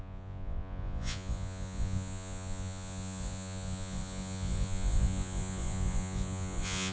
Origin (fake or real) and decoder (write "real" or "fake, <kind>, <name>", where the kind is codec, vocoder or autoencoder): fake, vocoder, Vocos